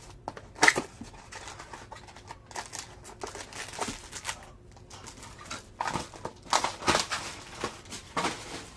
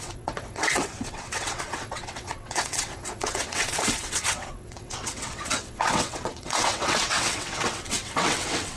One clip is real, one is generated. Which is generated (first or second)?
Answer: second